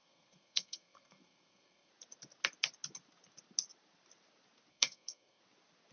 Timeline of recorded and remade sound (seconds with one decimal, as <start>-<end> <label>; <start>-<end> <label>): 0.0-1.9 remade; 1.9-4.7 recorded; 4.7-5.4 remade; 5.4-5.9 recorded